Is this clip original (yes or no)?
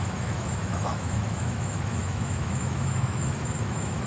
no